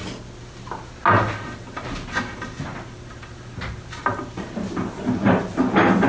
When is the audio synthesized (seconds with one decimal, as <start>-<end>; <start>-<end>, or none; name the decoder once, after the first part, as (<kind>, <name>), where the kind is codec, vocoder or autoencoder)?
none